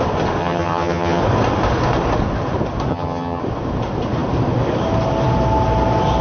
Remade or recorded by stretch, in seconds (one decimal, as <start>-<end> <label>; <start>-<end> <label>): 0.0-0.4 recorded; 0.4-1.2 remade; 1.2-2.9 recorded; 2.9-3.4 remade; 3.4-6.2 recorded